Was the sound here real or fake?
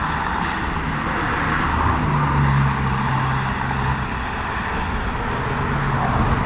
real